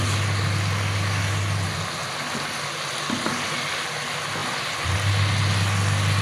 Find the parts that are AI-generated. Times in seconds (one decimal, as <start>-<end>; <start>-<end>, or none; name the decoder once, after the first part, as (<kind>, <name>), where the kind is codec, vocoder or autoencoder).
none